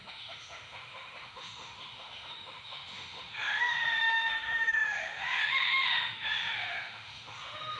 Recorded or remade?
remade